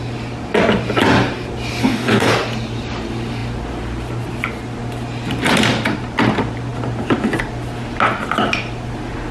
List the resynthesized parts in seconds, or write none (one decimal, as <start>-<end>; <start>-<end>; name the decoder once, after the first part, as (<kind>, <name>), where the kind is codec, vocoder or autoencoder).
1.8-2.3 (codec, DAC)